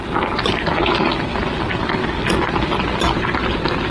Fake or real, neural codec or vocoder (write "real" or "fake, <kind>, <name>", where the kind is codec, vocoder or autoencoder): real